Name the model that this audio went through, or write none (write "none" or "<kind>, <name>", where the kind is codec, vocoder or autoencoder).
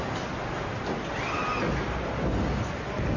none